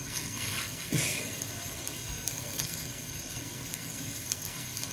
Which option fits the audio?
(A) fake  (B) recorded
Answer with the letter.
A